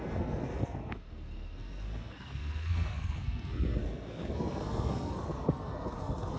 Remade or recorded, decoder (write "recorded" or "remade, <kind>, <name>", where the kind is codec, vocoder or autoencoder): remade, codec, SNAC